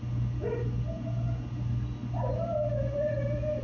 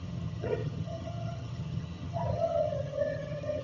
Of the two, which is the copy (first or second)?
second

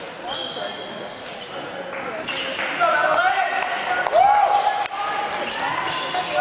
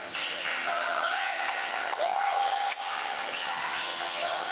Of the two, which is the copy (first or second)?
second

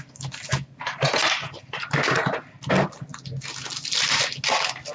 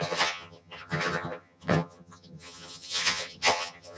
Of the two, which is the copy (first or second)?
second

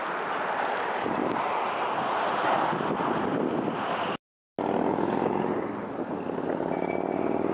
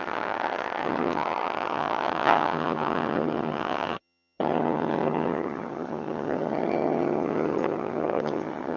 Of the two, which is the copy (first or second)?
second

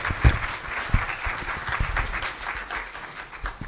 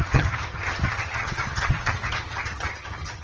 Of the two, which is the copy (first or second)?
second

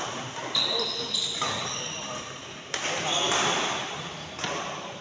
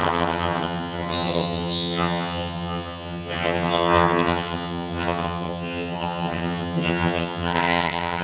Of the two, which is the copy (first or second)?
second